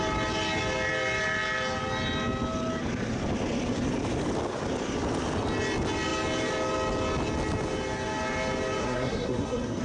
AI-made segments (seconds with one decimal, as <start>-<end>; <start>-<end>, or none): 8.8-9.8